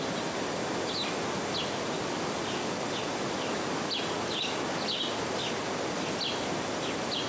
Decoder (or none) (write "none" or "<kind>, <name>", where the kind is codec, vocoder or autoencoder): none